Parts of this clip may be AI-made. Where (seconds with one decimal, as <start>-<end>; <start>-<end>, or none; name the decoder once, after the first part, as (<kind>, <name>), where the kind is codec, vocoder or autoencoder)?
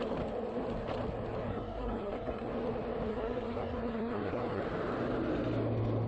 1.5-2.5 (codec, SNAC); 3.1-4.6